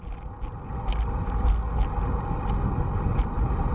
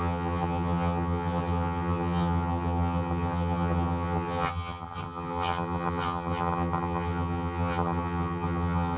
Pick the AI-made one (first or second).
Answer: second